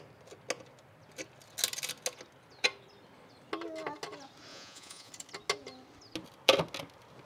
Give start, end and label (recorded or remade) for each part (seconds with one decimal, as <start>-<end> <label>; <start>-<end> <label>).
0.0-4.5 recorded; 4.5-5.1 remade; 5.1-7.3 recorded